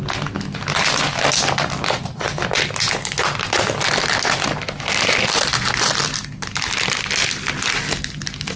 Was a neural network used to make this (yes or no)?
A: no